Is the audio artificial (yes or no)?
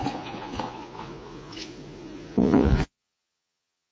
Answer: yes